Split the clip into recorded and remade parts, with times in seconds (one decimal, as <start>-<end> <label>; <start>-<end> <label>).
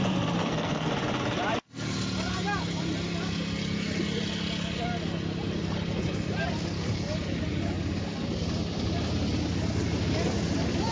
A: 0.0-0.4 recorded; 0.4-0.9 remade; 0.9-10.9 recorded